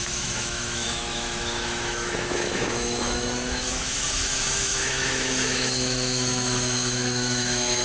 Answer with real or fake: fake